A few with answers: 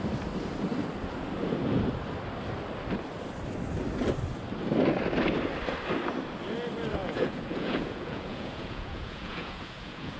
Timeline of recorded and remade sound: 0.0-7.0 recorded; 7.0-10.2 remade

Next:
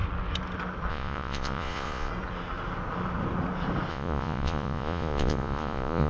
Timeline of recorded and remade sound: 0.0-0.9 recorded; 0.9-2.1 remade; 2.1-3.9 recorded; 3.9-6.1 remade

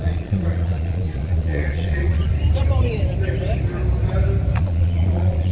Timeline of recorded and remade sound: 0.0-2.3 remade; 2.3-4.6 recorded; 4.6-5.5 remade

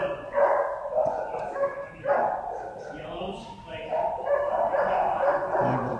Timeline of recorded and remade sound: 0.0-1.3 remade; 1.3-4.9 recorded; 4.9-6.0 remade

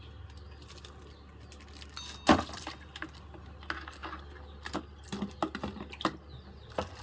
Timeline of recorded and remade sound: 0.0-7.0 recorded

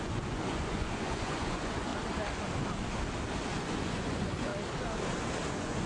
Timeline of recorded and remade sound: 0.0-1.9 remade; 1.9-3.5 recorded; 3.5-4.5 remade; 4.5-5.5 recorded; 5.5-5.9 remade

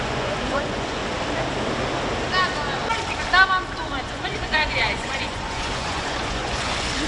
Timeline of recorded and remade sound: 0.0-1.0 remade; 1.0-4.0 recorded; 4.0-7.1 remade